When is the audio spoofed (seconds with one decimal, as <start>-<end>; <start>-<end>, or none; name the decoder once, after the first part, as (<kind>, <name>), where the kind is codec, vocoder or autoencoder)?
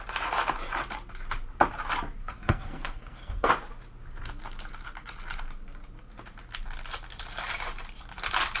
2.2-3.5 (codec, SNAC)